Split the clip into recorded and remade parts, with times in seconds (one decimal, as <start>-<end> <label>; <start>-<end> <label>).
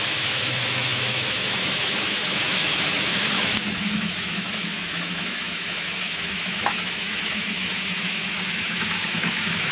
0.0-9.7 remade